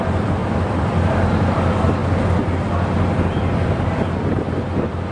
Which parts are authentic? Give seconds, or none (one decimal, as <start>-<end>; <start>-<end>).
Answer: 2.0-3.4